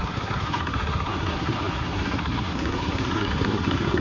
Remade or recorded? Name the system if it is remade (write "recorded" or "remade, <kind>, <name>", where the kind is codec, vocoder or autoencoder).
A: remade, codec, SNAC